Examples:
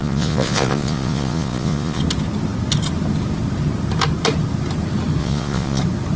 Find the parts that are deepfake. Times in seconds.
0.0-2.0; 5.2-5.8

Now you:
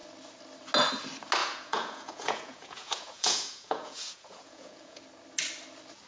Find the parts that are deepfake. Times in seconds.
1.4-5.0

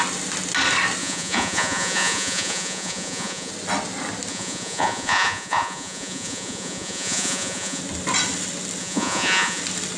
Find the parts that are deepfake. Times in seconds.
1.0-3.5; 4.3-7.8; 8.8-9.6

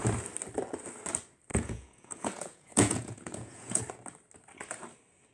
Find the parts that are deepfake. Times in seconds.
1.5-3.8

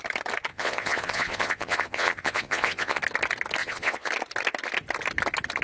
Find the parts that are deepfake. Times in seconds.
0.5-3.0; 3.6-4.1